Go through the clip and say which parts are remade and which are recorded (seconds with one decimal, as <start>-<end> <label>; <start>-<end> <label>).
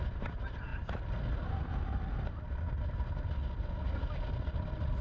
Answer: 0.0-5.0 recorded